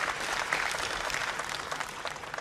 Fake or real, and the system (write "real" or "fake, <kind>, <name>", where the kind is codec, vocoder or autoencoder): fake, vocoder, BigVGAN v2